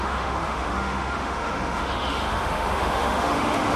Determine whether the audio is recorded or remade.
remade